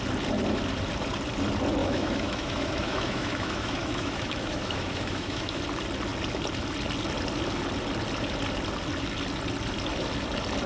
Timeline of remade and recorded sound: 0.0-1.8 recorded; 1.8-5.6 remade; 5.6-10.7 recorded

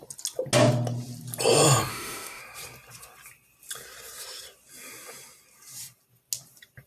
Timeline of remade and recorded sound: 0.0-1.9 recorded; 1.9-2.4 remade; 2.4-6.9 recorded

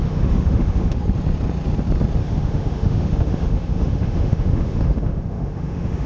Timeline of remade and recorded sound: 0.0-1.0 remade; 1.0-2.2 recorded; 2.2-6.1 remade

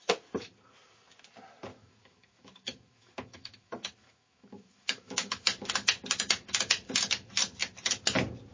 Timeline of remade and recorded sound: 0.0-1.7 recorded; 1.7-5.7 remade; 5.7-8.5 recorded

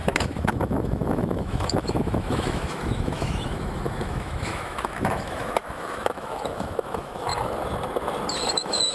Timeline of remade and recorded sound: 0.0-7.3 remade; 7.3-8.5 recorded; 8.5-8.9 remade